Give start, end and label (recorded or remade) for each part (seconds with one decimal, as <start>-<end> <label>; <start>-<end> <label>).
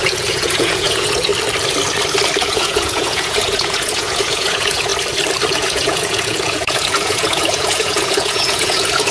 0.0-1.3 remade; 1.3-2.4 recorded; 2.4-4.9 remade; 4.9-5.5 recorded; 5.5-9.1 remade